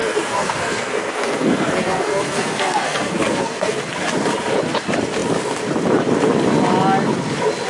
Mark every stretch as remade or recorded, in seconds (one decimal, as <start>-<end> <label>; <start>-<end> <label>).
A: 0.0-3.8 remade; 3.8-7.7 recorded